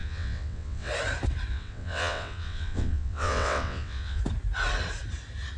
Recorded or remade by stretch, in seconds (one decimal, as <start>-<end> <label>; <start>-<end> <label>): 0.0-0.9 remade; 0.9-1.5 recorded; 1.5-4.2 remade; 4.2-5.6 recorded